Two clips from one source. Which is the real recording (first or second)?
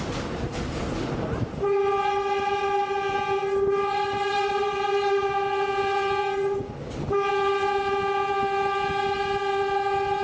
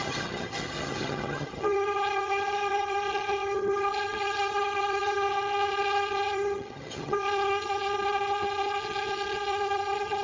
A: first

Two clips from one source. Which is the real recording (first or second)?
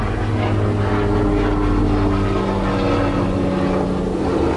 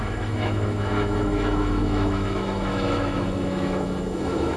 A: first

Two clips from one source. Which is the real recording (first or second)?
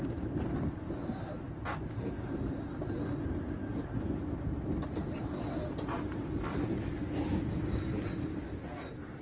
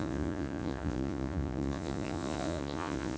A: first